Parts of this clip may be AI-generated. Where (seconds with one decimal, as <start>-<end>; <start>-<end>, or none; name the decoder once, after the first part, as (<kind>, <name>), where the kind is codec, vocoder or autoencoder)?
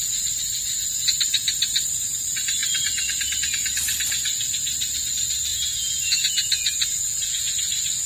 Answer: 5.5-7.5 (vocoder, Vocos)